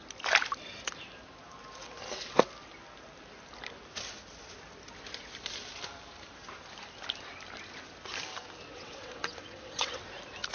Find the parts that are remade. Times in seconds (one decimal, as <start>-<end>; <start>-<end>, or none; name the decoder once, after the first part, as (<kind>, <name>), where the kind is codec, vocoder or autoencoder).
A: 8.7-10.0 (vocoder, WaveNeXt)